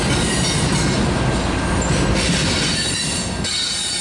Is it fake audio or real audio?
real